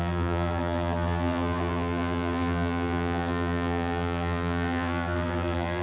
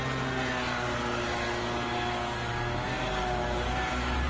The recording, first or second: second